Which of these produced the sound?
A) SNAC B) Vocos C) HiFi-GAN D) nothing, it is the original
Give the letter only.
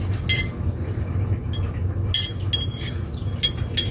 D